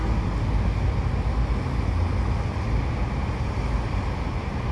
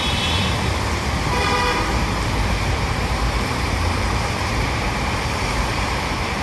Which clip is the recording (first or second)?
first